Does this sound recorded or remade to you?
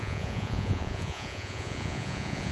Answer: remade